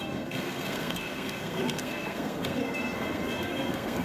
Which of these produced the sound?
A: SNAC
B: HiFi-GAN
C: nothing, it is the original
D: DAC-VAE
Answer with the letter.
A